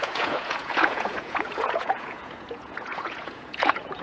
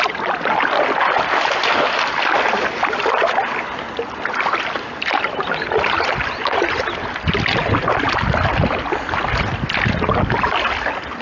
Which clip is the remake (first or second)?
first